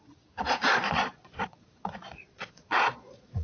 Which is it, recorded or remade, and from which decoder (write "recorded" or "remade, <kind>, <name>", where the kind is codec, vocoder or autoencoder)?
remade, vocoder, Vocos